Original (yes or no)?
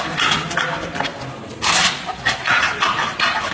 yes